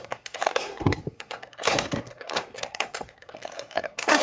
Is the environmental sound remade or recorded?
remade